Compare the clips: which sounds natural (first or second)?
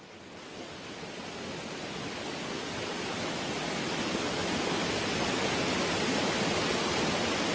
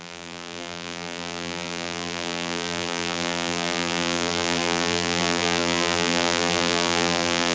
first